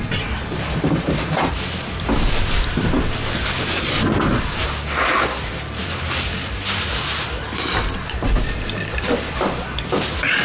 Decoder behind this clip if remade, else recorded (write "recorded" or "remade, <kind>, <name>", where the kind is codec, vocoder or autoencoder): recorded